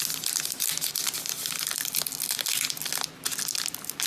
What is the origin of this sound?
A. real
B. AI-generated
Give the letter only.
A